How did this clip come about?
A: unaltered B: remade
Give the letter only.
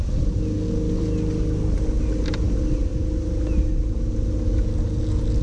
A